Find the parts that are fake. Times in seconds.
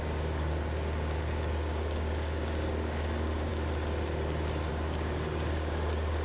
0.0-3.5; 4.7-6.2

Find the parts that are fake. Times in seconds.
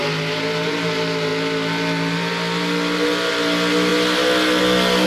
none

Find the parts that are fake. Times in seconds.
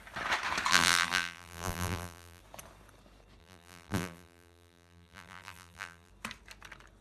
0.7-2.4; 3.4-6.1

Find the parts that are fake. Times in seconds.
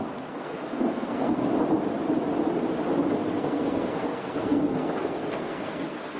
0.0-1.5; 3.3-6.2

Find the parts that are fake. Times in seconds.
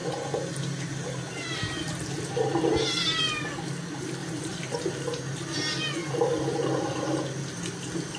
4.2-4.9; 6.0-7.0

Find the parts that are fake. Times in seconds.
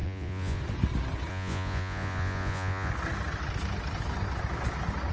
0.0-0.6; 1.3-2.9